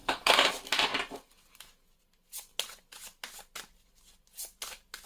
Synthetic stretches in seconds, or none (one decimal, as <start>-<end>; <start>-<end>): 0.0-0.5